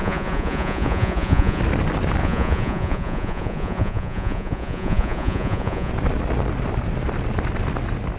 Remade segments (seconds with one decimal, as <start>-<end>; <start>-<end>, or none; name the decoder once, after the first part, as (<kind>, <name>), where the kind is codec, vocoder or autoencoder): 0.0-1.6 (vocoder, Vocos); 2.2-5.9